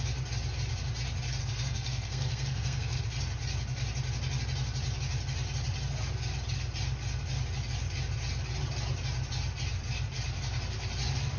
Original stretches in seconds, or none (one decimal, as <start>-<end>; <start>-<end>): 0.0-1.4; 3.0-11.4